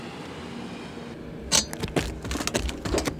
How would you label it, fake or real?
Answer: real